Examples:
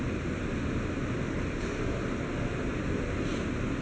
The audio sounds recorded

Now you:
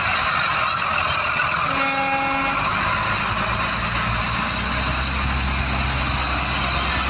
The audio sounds recorded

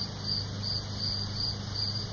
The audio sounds recorded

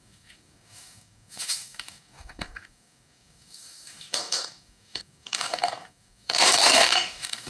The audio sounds remade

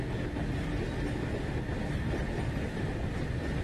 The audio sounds recorded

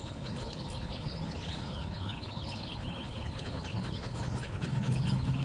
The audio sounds remade